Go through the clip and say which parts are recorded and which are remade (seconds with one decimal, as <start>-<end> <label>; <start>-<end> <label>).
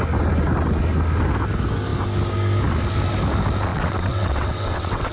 0.0-3.7 recorded; 3.7-5.1 remade